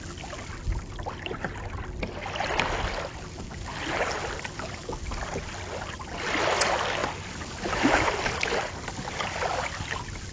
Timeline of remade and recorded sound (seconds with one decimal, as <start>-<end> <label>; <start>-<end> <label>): 0.0-10.3 recorded